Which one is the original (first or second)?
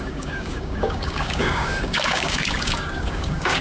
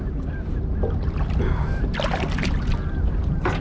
second